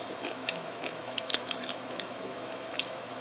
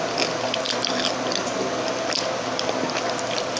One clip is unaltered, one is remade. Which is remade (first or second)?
first